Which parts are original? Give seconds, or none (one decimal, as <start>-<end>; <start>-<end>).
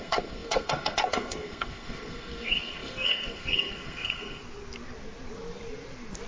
4.4-6.3